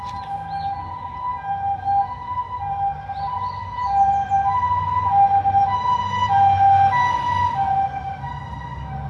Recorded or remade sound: recorded